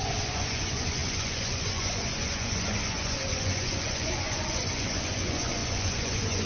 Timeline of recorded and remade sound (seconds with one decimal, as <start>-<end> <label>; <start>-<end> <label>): 0.0-6.5 remade